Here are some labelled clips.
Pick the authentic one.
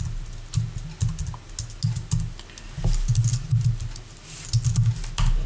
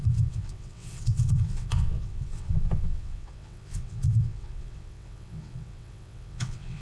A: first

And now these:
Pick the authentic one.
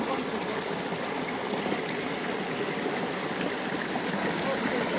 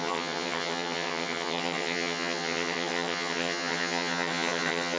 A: first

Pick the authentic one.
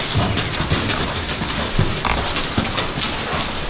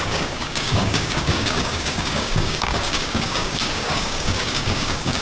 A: first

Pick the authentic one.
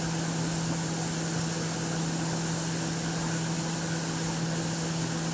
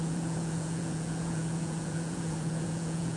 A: first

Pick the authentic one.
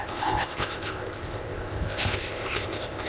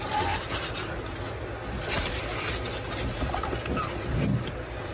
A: second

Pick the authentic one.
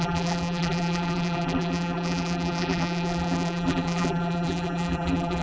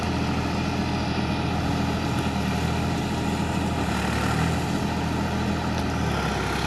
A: second